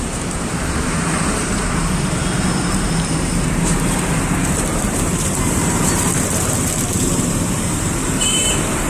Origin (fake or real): fake